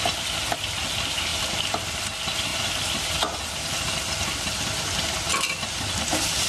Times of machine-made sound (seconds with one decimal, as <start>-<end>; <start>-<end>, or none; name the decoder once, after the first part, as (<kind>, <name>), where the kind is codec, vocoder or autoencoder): 1.3-2.0 (vocoder, BigVGAN v2); 5.3-6.5